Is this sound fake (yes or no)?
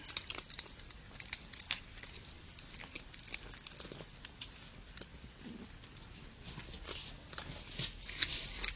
no